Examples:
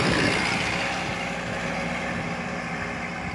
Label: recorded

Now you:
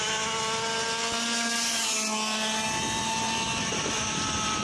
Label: recorded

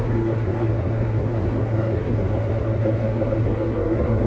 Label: remade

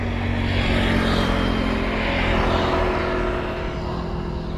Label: recorded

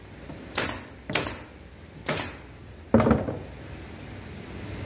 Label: recorded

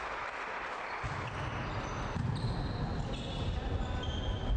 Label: recorded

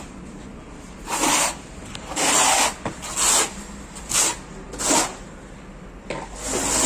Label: recorded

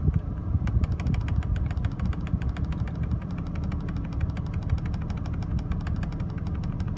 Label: recorded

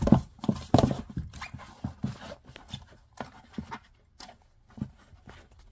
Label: recorded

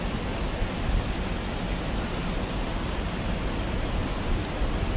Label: recorded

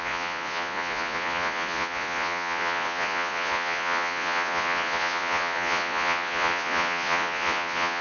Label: remade